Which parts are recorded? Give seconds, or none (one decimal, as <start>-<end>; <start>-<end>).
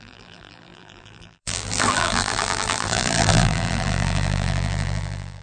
none